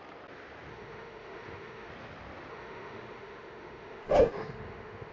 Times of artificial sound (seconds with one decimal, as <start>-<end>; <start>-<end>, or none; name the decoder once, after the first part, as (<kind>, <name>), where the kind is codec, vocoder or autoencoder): 0.7-1.9 (autoencoder, DAC-VAE); 2.5-5.1